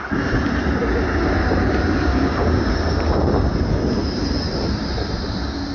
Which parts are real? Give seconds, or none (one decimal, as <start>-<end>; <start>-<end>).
0.0-5.7